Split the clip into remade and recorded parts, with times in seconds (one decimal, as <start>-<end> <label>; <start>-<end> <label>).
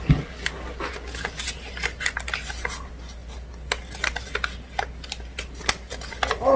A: 0.0-6.6 recorded